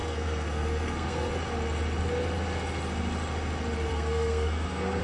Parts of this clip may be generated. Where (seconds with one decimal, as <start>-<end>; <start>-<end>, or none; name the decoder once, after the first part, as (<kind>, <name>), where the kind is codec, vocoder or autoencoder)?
0.0-1.3 (codec, SNAC); 3.9-5.0